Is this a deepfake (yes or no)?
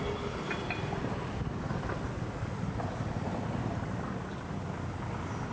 no